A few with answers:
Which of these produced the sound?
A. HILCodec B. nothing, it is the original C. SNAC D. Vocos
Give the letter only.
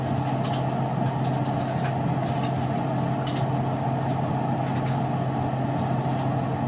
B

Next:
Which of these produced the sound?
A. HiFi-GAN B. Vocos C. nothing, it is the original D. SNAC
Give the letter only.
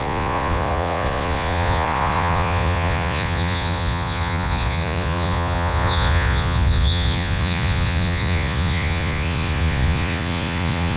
B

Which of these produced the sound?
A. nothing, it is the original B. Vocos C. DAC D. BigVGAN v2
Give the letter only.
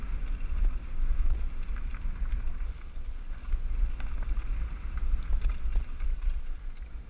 A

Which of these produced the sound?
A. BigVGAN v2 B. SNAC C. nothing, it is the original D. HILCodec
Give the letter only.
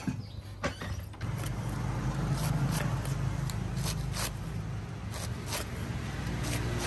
C